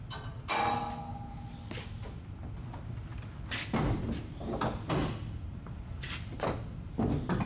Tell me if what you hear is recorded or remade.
recorded